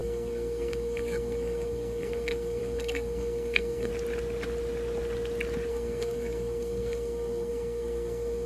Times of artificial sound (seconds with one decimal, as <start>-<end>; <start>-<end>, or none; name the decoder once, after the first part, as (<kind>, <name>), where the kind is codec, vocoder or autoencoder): 0.0-3.9 (codec, SNAC); 5.7-8.5